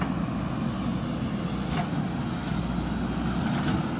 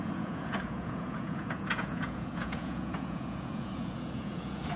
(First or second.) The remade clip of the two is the second